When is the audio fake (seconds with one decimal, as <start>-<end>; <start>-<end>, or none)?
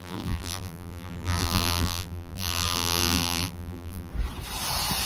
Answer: 0.0-4.1